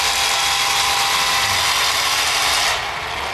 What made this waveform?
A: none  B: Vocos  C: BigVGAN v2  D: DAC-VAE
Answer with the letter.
A